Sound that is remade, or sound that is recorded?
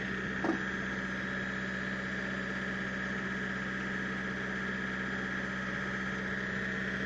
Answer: recorded